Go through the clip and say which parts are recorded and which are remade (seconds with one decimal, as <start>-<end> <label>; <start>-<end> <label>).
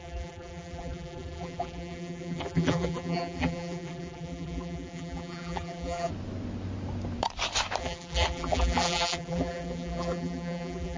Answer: 0.0-6.1 remade; 6.1-7.8 recorded; 7.8-11.0 remade